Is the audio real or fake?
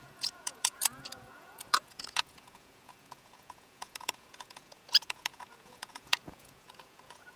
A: fake